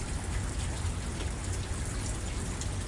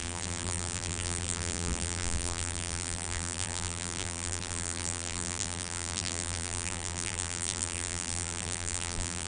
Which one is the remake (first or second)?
second